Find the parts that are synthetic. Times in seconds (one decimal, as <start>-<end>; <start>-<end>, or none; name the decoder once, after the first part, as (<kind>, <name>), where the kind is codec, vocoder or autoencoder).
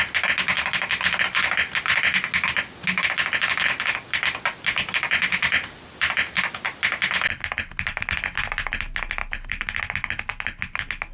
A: none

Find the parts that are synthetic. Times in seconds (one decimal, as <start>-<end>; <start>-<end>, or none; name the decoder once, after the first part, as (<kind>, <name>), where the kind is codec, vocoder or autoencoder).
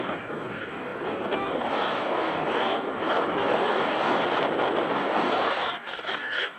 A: 0.0-4.2 (codec, DAC); 4.9-6.6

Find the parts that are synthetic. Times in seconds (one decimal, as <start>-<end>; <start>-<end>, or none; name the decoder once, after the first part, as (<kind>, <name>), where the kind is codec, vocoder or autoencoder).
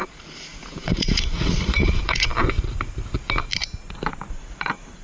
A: 0.0-2.3 (vocoder, Vocos); 4.3-5.0